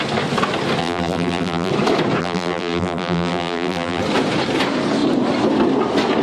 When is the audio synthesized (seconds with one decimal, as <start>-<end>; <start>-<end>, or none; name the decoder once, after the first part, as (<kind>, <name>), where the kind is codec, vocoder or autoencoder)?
0.8-1.7 (vocoder, BigVGAN v2); 2.2-4.0